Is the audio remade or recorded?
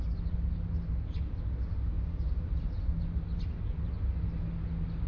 recorded